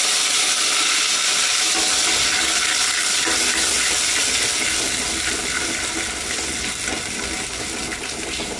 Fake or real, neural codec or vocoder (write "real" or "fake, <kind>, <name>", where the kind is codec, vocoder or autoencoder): real